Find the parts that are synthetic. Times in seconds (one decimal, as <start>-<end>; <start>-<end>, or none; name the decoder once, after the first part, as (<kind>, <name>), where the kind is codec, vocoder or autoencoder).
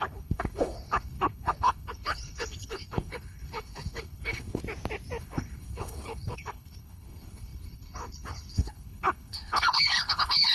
0.0-4.6 (codec, HILCodec); 5.2-10.5